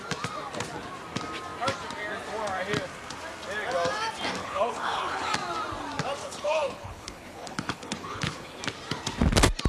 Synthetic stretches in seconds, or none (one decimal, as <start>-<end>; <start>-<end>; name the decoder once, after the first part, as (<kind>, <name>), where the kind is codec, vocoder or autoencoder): 4.4-5.3 (codec, HILCodec); 6.2-8.6